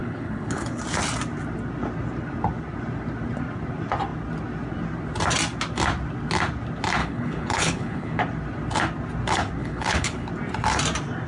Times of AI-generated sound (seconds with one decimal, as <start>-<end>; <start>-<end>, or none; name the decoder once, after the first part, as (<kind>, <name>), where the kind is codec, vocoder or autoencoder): 0.0-0.8 (codec, HILCodec); 7.0-8.2; 9.6-10.3